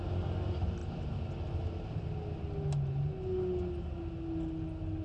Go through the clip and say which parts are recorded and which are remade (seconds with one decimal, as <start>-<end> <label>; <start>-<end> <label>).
0.0-5.0 recorded